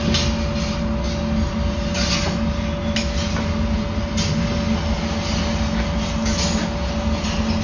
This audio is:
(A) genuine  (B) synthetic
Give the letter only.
A